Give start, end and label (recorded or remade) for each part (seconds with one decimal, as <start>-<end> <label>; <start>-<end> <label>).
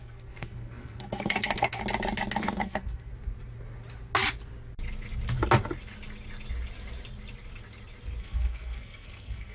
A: 0.0-1.8 remade; 1.8-2.4 recorded; 2.4-3.1 remade; 3.1-8.2 recorded; 8.2-9.5 remade